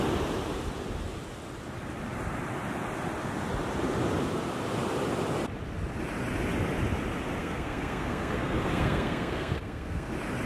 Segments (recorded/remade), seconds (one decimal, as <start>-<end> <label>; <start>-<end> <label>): 0.0-7.4 recorded; 7.4-10.1 remade; 10.1-10.5 recorded